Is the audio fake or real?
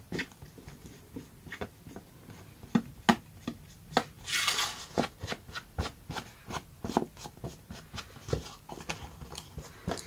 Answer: real